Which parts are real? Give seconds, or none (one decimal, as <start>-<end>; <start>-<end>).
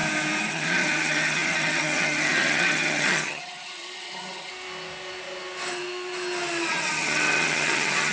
0.0-0.5; 4.5-6.7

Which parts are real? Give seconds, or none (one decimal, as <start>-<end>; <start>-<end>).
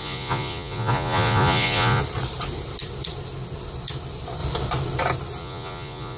2.0-5.4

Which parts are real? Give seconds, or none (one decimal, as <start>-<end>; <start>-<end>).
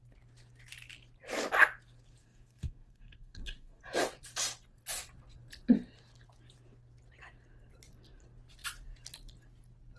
0.0-2.2; 3.8-10.0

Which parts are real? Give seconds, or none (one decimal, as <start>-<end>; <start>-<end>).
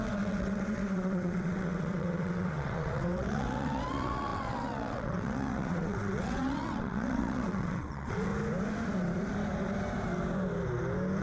8.3-11.2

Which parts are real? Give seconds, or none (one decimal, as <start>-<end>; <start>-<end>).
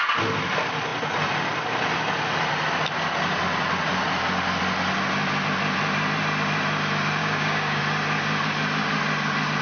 0.0-7.2; 7.8-9.6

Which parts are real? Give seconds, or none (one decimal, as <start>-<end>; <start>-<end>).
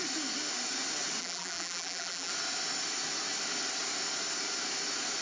0.0-1.2; 2.3-5.2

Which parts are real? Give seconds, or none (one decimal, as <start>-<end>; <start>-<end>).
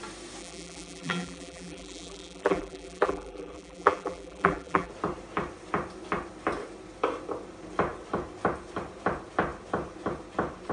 0.0-0.4; 4.9-10.7